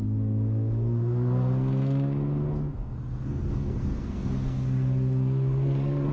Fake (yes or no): yes